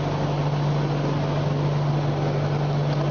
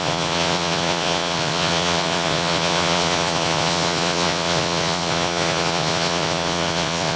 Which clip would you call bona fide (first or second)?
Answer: first